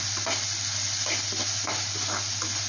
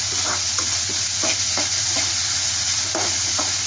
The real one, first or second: first